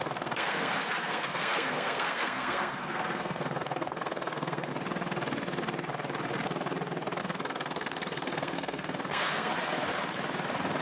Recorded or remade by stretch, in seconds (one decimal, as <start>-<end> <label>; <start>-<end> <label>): 0.0-4.7 remade; 4.7-7.2 recorded; 7.2-9.5 remade; 9.5-10.8 recorded